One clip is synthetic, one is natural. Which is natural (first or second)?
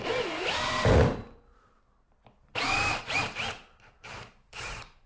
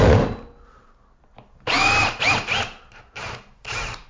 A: second